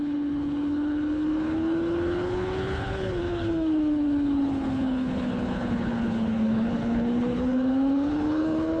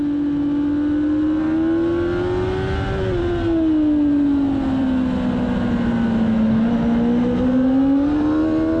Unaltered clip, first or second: second